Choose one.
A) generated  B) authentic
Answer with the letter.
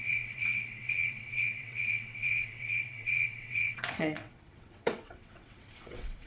A